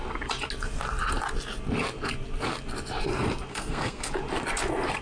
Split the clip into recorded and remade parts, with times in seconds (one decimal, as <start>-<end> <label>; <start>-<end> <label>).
0.0-3.5 recorded; 3.5-4.1 remade; 4.1-5.0 recorded